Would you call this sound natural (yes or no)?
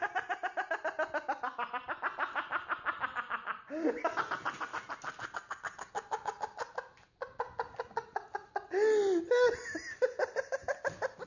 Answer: yes